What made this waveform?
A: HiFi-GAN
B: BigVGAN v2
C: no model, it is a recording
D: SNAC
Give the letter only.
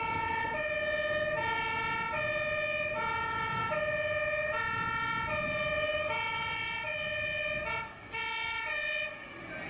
C